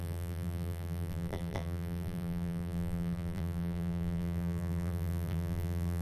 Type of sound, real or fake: fake